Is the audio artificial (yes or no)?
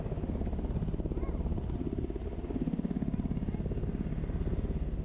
no